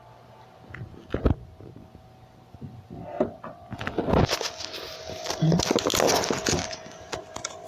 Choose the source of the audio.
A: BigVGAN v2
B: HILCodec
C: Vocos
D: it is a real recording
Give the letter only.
D